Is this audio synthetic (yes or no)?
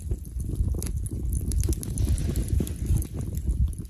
no